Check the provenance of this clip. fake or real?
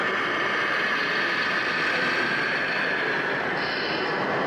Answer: real